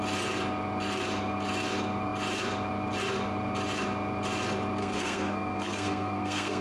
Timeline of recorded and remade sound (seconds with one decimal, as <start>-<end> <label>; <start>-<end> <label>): 0.0-4.8 recorded; 4.8-6.6 remade